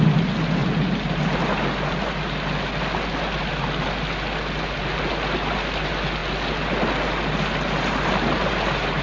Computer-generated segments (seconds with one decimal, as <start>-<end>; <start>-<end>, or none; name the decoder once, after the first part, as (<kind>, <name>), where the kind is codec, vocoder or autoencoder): none